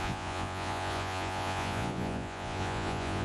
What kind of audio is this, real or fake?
fake